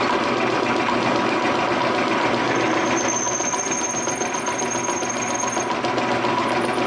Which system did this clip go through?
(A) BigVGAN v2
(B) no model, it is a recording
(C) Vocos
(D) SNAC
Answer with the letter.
B